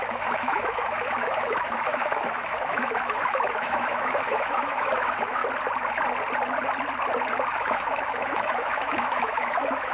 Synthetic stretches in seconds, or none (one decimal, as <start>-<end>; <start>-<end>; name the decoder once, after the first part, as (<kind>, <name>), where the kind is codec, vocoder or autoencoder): 0.0-5.4 (autoencoder, DAC-VAE); 7.5-9.9